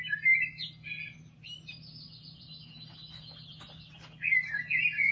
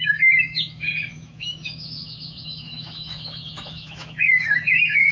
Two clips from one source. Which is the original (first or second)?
first